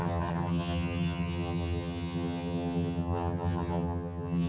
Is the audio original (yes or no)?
no